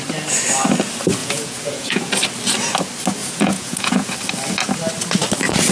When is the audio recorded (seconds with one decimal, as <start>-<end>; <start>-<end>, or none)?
0.0-1.2; 2.1-3.2; 4.1-5.7